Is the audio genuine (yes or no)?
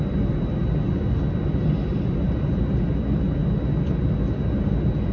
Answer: yes